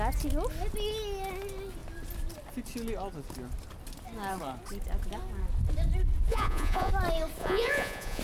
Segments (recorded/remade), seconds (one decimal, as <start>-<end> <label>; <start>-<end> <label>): 0.0-6.3 recorded; 6.3-6.9 remade; 6.9-7.4 recorded; 7.4-8.2 remade